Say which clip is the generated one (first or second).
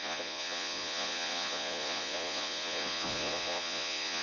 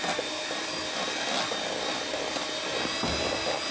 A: first